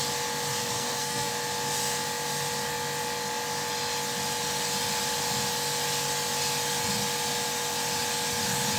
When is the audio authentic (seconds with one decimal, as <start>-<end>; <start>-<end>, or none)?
0.0-0.6; 1.3-8.8